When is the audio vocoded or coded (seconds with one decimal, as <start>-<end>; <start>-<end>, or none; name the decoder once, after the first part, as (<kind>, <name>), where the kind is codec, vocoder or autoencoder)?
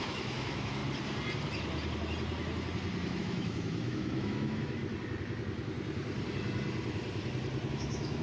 0.0-0.8 (autoencoder, DAC-VAE); 3.2-4.8; 7.7-8.2